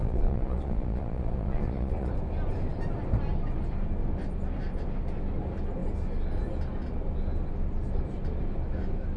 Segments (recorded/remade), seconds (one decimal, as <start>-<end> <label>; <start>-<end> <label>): 0.0-2.1 remade; 2.1-9.2 recorded